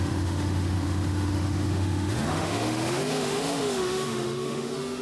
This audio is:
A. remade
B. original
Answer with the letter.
A